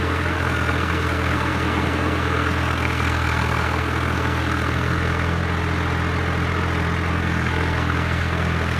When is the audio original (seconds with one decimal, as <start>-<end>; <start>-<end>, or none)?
5.4-7.1